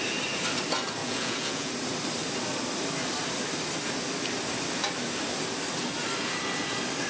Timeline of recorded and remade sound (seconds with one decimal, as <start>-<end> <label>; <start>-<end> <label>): 0.0-1.0 recorded; 1.0-1.7 remade; 1.7-7.1 recorded